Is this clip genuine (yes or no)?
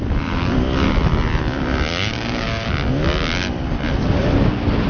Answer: yes